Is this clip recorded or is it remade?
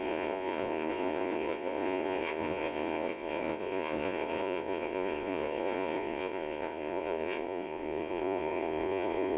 remade